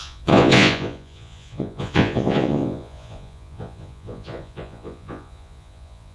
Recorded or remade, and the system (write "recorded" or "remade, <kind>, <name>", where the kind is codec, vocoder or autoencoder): remade, vocoder, Vocos